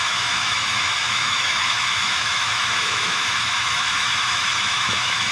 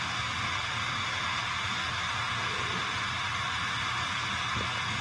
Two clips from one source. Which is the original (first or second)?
second